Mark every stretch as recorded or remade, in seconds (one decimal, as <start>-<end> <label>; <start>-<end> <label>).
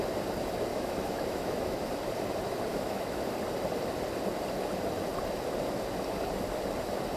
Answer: 0.0-0.7 recorded; 0.7-1.9 remade; 1.9-2.7 recorded; 2.7-3.2 remade; 3.2-7.2 recorded